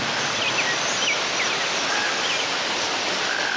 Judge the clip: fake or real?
real